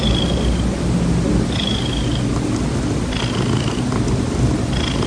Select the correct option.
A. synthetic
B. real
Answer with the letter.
B